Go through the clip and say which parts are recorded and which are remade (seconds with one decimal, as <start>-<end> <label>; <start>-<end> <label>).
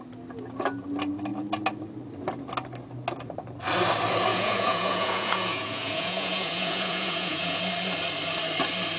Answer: 0.0-4.3 recorded; 4.3-7.6 remade; 7.6-9.0 recorded